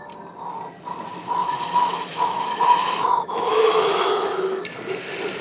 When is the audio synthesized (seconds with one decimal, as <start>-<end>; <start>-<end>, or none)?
1.4-4.6